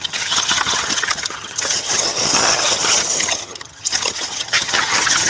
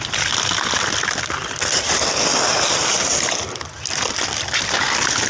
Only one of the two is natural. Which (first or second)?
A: second